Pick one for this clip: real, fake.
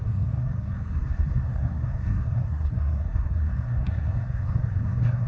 fake